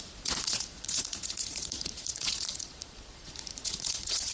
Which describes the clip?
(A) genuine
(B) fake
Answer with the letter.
B